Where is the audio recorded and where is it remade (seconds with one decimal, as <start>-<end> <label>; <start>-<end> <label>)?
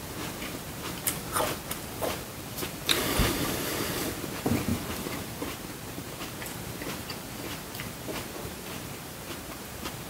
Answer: 0.0-10.1 remade